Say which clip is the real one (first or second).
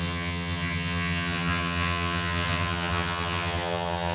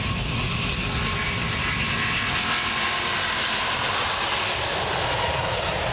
second